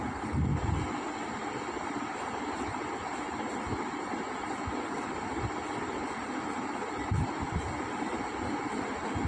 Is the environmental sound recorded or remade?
recorded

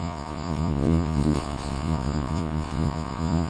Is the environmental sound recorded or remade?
remade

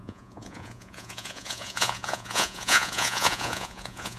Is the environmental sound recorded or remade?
remade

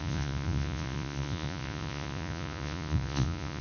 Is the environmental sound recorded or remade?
remade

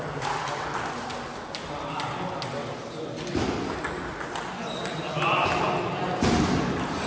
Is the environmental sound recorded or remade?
recorded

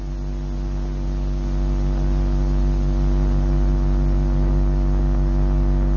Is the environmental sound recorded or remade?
recorded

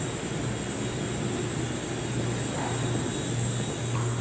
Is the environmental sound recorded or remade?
recorded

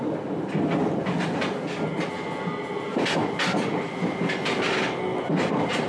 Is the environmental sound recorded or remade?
recorded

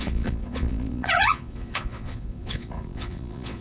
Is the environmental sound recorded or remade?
remade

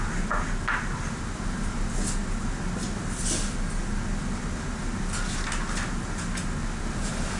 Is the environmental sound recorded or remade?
recorded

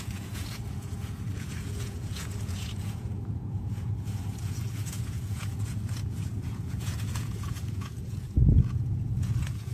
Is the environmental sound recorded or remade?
remade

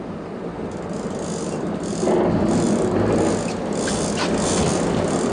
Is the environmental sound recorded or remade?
recorded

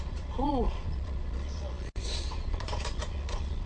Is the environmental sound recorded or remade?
remade